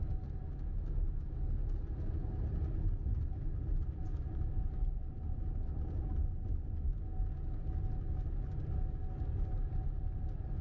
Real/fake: real